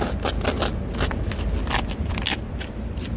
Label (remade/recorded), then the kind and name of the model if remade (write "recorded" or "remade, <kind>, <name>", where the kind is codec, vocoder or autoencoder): recorded